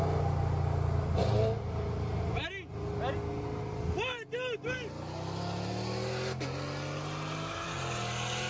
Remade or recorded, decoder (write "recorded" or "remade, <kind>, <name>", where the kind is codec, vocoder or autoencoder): recorded